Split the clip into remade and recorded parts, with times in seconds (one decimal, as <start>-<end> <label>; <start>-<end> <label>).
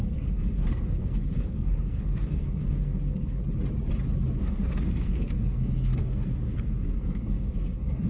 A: 0.0-3.4 remade; 3.4-4.4 recorded; 4.4-8.1 remade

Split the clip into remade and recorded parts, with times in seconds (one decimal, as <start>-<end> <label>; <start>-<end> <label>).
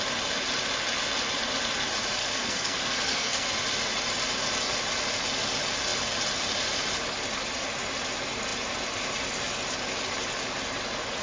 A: 0.0-2.2 recorded; 2.2-3.5 remade; 3.5-11.2 recorded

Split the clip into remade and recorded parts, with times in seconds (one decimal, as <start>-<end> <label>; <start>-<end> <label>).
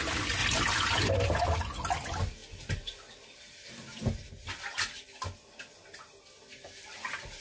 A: 0.0-7.4 recorded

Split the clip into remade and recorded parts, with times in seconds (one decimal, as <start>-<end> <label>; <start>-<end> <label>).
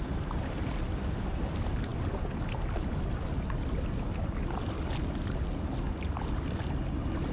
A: 0.0-7.3 recorded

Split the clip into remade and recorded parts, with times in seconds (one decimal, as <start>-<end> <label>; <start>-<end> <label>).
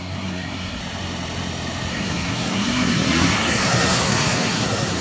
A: 0.0-0.8 remade; 0.8-1.9 recorded; 1.9-5.0 remade